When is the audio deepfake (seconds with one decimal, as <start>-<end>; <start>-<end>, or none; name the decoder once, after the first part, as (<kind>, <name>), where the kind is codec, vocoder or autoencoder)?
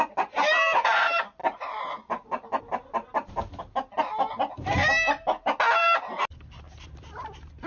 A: none